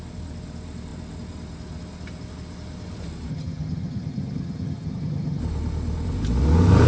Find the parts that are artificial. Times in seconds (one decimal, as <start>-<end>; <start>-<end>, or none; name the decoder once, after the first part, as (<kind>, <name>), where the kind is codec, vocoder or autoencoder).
3.3-5.4 (vocoder, HiFi-GAN)